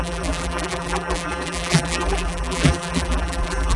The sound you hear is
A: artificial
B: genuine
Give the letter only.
A